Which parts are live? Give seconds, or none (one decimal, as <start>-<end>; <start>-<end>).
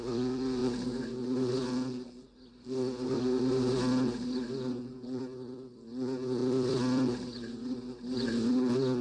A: 0.0-0.6; 5.2-6.4